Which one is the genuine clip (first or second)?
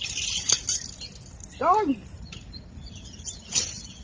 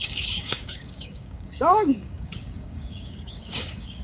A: first